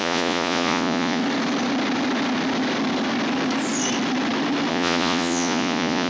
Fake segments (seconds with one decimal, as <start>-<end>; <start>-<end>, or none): 0.0-1.2; 4.7-6.1